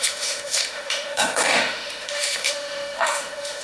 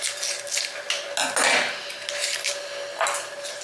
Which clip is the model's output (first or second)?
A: first